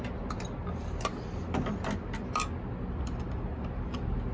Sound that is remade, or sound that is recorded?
recorded